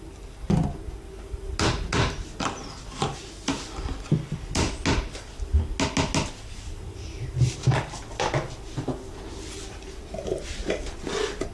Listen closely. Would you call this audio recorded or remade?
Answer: recorded